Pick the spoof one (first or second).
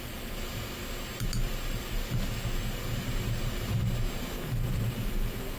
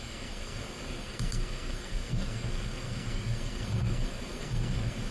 second